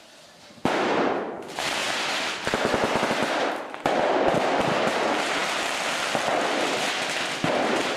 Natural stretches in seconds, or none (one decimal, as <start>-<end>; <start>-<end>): 0.0-8.0